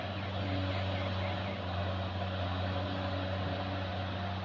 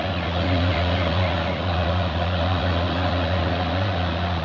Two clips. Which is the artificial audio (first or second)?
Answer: second